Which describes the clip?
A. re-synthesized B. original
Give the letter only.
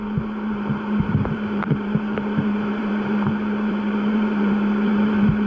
A